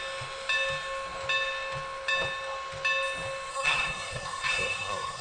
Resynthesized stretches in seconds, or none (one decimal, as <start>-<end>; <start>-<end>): 3.5-5.2